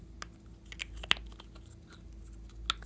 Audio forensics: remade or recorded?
recorded